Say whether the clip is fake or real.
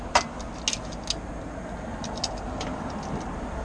real